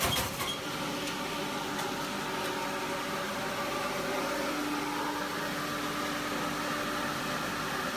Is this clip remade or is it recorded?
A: recorded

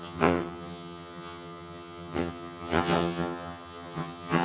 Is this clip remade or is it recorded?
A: remade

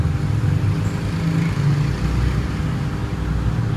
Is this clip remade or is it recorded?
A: recorded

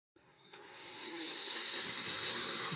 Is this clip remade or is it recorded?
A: remade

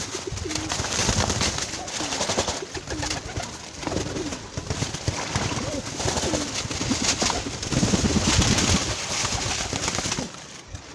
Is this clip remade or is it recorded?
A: recorded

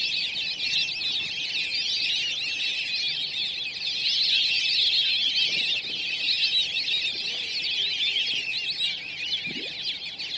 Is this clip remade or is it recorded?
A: recorded